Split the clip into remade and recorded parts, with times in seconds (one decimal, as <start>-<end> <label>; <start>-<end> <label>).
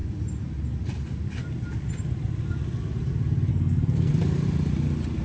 0.0-3.5 recorded; 3.5-4.1 remade; 4.1-5.2 recorded